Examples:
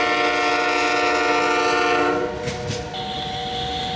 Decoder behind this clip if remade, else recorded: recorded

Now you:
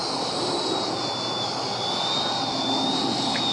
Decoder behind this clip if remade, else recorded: recorded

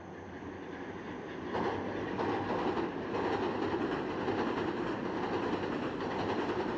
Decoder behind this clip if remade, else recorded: recorded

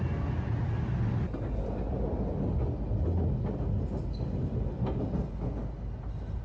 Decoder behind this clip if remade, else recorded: recorded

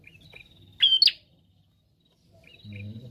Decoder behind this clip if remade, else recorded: recorded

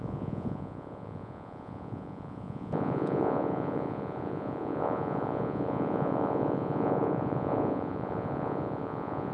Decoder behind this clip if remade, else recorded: remade, vocoder, Vocos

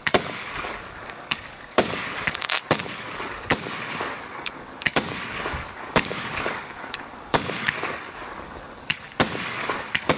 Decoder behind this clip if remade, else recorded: remade, codec, DAC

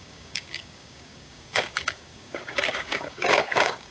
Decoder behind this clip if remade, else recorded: remade, codec, DAC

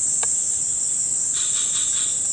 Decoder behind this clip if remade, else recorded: remade, vocoder, BigVGAN v2